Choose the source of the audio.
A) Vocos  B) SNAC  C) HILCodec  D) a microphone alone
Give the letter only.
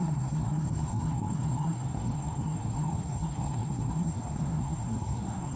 B